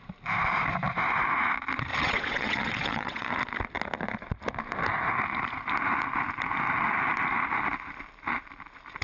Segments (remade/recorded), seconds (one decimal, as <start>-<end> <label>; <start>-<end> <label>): 0.0-1.9 recorded; 1.9-3.3 remade; 3.3-9.0 recorded